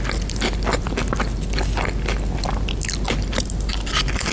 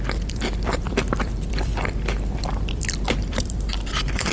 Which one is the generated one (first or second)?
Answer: second